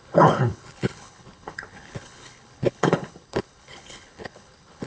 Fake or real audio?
fake